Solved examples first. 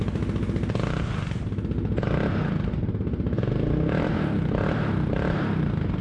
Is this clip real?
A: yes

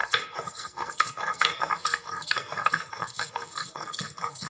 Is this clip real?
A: no